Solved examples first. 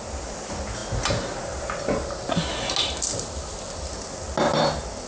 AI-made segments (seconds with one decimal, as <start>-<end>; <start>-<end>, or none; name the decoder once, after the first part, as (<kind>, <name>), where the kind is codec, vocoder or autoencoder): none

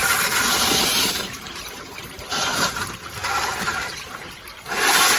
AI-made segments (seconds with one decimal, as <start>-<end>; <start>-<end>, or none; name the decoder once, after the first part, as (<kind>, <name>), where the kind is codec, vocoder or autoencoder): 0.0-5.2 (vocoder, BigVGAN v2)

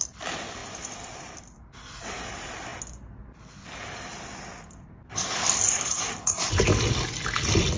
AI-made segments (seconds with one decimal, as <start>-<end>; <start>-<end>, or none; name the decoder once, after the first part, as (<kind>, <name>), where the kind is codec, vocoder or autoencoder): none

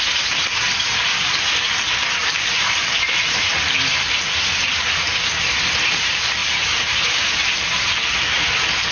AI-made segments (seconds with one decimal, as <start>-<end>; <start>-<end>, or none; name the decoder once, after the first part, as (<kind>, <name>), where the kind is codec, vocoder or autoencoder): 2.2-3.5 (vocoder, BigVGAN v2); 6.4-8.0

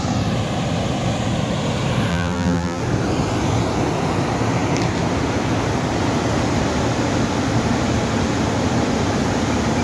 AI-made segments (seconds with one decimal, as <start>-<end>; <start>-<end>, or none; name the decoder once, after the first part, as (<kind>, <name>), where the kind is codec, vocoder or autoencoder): 2.1-2.8 (vocoder, BigVGAN v2)

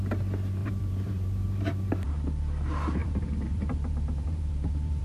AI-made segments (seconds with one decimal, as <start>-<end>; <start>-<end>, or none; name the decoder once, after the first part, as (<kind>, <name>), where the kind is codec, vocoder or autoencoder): 0.6-2.1 (vocoder, BigVGAN v2); 3.0-5.0

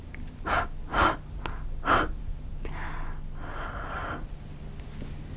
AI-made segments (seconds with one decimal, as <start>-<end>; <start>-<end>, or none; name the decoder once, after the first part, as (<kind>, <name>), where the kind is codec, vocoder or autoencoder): none

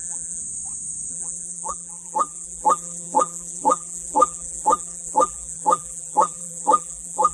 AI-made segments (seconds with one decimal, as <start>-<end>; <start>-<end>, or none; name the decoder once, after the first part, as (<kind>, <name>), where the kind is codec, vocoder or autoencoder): 0.0-0.4 (vocoder, BigVGAN v2); 1.1-7.3